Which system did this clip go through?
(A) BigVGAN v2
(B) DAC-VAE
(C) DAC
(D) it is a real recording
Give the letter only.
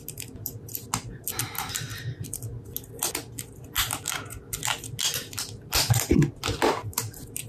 D